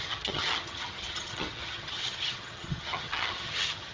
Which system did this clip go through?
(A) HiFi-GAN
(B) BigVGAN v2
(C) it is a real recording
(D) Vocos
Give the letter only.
A